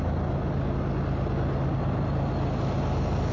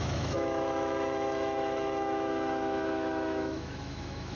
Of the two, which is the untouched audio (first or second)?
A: first